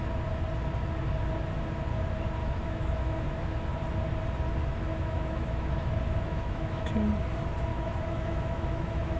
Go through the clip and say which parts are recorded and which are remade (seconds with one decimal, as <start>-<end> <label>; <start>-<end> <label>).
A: 0.0-2.4 recorded; 2.4-3.6 remade; 3.6-4.9 recorded; 4.9-6.9 remade; 6.9-7.7 recorded; 7.7-9.2 remade